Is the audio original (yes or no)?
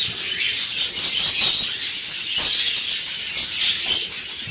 yes